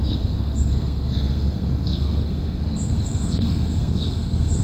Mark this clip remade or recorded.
remade